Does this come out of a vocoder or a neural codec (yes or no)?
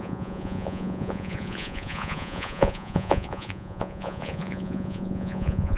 yes